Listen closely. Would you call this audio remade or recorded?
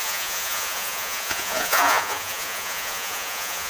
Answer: remade